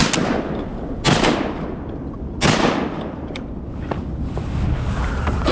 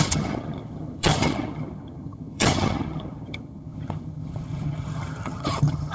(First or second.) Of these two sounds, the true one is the first